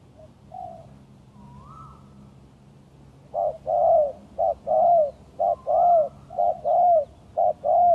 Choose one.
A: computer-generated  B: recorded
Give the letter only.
B